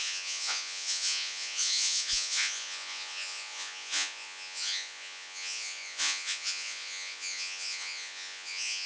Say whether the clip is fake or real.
fake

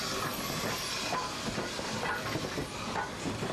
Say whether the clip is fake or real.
real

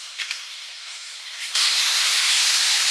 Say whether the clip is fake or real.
fake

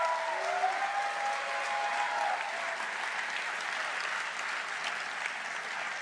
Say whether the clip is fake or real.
real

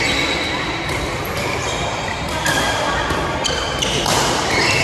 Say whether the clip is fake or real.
real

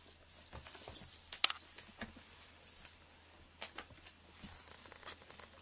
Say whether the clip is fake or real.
real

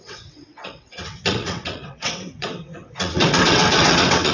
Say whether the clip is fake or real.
fake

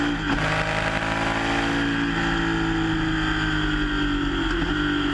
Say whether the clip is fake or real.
real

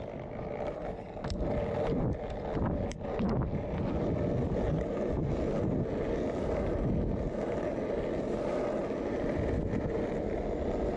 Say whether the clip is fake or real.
real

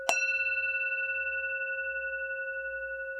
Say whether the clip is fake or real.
real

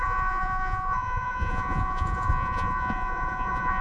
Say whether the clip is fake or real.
fake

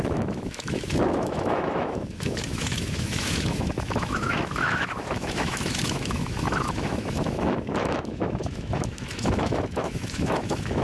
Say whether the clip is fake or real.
fake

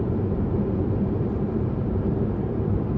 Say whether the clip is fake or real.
fake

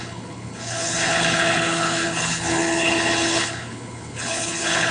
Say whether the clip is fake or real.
fake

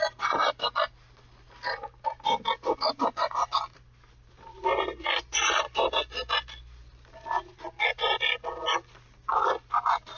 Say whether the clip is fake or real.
real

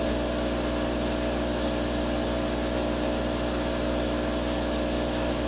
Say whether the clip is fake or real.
real